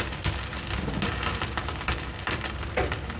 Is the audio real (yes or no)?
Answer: yes